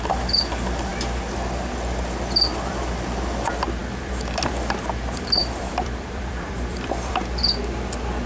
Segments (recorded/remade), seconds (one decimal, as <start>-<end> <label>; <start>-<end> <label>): 0.0-3.8 recorded; 3.8-4.5 remade; 4.5-5.4 recorded; 5.4-7.1 remade; 7.1-8.3 recorded